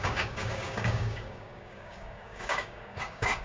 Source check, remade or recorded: remade